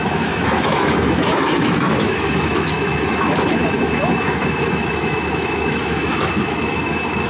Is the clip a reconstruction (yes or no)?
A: yes